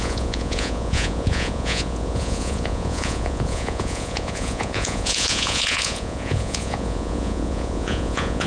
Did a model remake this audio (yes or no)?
yes